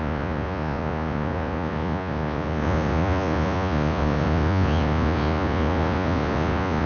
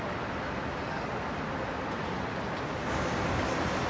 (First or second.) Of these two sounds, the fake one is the first